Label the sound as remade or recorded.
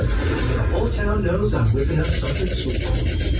recorded